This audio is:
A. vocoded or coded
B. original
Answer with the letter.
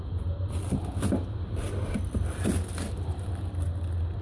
B